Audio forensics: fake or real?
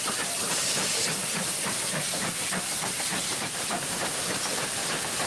fake